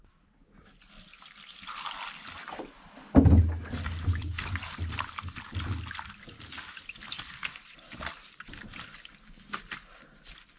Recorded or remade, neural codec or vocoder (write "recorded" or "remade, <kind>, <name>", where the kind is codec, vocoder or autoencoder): recorded